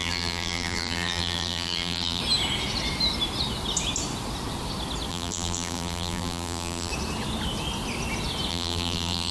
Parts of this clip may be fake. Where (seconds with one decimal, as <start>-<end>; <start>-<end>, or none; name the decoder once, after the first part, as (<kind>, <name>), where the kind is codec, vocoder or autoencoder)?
0.0-2.2 (vocoder, BigVGAN v2); 5.1-6.9; 8.5-9.3